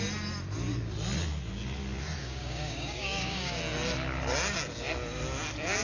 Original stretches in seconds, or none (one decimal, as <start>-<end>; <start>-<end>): 0.0-2.2; 3.6-5.8

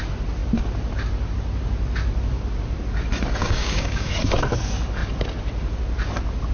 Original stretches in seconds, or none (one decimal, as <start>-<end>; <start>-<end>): 0.0-3.4; 4.1-6.5

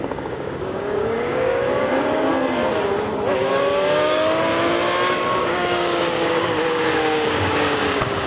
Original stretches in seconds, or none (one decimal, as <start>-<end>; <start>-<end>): 2.3-3.5; 4.5-5.4

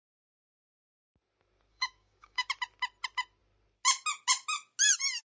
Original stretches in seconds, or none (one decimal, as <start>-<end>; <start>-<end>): 0.0-1.7; 2.5-5.3

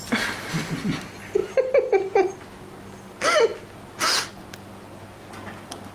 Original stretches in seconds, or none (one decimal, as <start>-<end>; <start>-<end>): 0.0-5.9

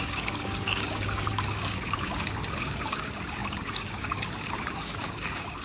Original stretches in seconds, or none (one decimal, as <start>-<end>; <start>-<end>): none

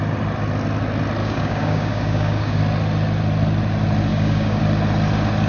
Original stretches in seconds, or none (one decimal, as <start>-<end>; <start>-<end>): 0.0-1.2; 2.6-4.1; 4.6-5.5